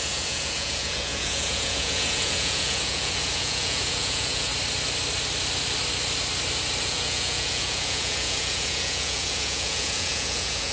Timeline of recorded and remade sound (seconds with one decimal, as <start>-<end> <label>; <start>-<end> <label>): 0.0-4.5 remade; 4.5-6.8 recorded; 6.8-10.7 remade